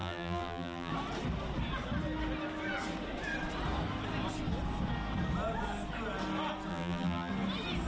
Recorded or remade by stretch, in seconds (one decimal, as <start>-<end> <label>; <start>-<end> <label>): 0.0-0.9 remade; 0.9-6.7 recorded; 6.7-7.3 remade; 7.3-7.9 recorded